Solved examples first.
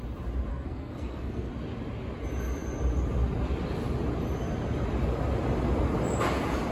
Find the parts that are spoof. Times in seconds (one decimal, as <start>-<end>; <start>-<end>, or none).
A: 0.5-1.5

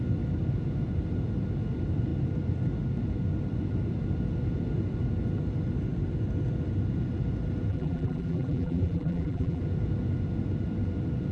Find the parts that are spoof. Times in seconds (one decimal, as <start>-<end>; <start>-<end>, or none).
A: 7.7-9.6

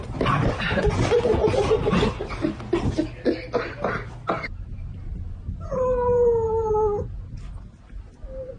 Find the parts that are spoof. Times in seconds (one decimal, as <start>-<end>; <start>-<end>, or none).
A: none

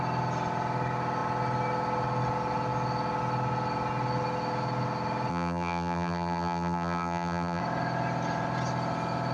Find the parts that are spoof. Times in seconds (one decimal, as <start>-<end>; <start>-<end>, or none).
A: 5.3-7.6